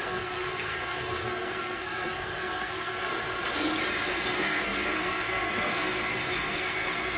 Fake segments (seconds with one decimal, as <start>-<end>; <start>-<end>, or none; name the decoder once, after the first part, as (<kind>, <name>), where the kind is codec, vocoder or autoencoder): 0.0-3.1 (codec, SNAC); 4.1-7.2